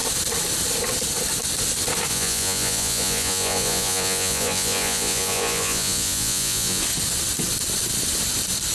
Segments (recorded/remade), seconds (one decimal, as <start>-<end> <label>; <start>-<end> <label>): 0.0-2.1 recorded; 2.1-6.8 remade; 6.8-8.7 recorded